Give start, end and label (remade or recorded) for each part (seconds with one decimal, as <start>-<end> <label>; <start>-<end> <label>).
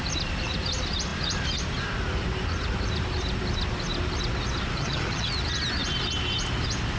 0.0-4.8 recorded; 4.8-5.3 remade; 5.3-7.0 recorded